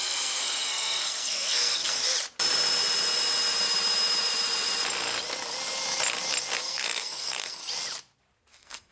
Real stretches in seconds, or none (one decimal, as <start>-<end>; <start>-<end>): 2.0-6.6; 7.6-8.5